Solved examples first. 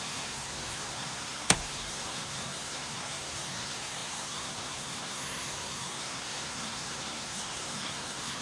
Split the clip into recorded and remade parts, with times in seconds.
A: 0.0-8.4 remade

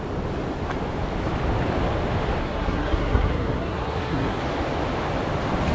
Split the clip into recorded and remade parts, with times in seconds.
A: 0.0-2.4 recorded; 2.4-4.4 remade; 4.4-5.7 recorded

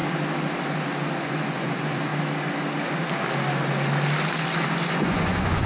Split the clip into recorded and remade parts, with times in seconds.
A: 0.0-1.2 recorded; 1.2-2.1 remade; 2.1-4.9 recorded; 4.9-5.7 remade

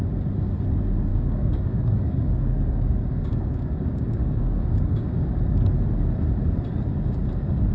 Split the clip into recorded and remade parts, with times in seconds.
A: 0.0-1.1 recorded; 1.1-5.7 remade; 5.7-7.7 recorded

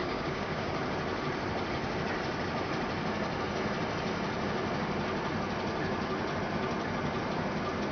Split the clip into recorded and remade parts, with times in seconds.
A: 0.0-0.7 remade; 0.7-7.9 recorded

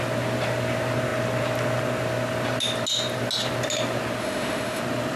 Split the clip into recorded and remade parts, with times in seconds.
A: 0.0-4.2 recorded; 4.2-4.8 remade; 4.8-5.2 recorded

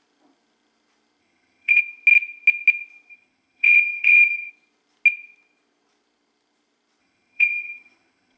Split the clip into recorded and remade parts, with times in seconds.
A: 0.0-1.2 recorded; 1.2-1.8 remade; 1.8-3.1 recorded; 3.1-4.5 remade; 4.5-7.0 recorded; 7.0-8.4 remade

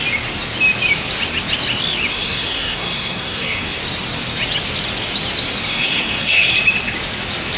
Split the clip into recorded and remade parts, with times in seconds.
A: 0.0-2.1 recorded; 2.1-3.8 remade; 3.8-5.7 recorded; 5.7-6.5 remade; 6.5-7.6 recorded